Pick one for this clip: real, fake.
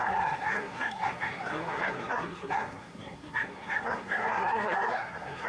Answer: fake